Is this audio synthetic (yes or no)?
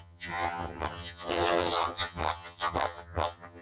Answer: yes